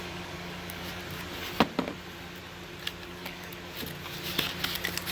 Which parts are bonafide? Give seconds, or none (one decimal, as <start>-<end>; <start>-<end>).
1.0-3.0; 3.5-5.1